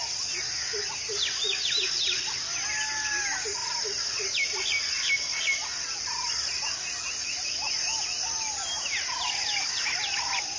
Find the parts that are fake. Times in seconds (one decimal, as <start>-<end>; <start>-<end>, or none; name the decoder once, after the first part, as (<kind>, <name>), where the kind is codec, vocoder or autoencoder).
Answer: none